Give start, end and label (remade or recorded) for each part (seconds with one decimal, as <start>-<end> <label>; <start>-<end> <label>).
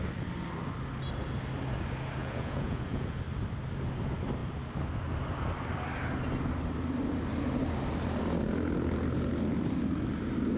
0.0-2.2 recorded; 2.2-3.2 remade; 3.2-10.6 recorded